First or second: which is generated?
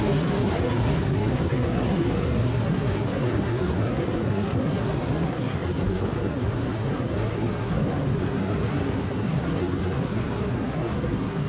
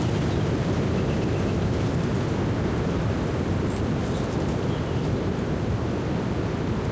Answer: first